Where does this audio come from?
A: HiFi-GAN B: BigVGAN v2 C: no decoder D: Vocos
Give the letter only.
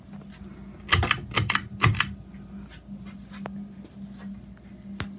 C